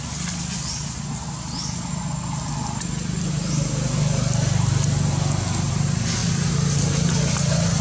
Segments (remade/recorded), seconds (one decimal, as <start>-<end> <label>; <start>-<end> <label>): 0.0-7.8 recorded